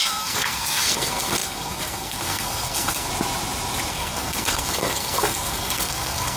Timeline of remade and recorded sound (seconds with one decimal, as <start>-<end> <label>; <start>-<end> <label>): 0.0-3.1 remade; 3.1-3.9 recorded; 3.9-6.4 remade